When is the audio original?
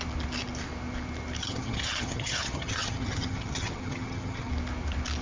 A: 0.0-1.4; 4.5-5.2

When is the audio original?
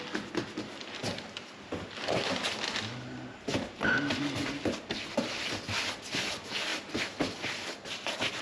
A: 0.0-8.4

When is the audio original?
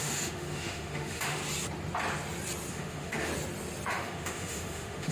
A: 1.4-2.7; 3.3-3.9